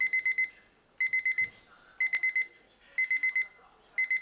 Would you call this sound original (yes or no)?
yes